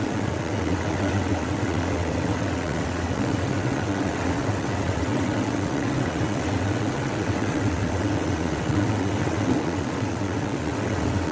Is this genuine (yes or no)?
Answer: no